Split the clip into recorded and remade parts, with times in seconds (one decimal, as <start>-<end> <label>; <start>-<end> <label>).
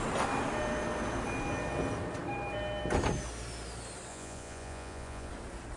0.0-4.1 recorded; 4.1-5.3 remade; 5.3-5.8 recorded